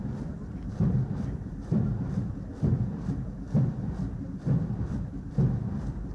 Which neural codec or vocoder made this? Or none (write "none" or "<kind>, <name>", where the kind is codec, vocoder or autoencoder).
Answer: vocoder, BigVGAN v2